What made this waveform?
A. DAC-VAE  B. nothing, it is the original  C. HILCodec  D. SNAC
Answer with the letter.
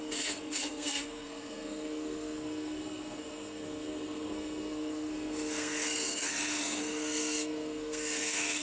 D